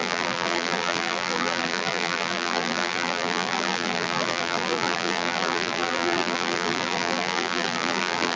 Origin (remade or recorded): remade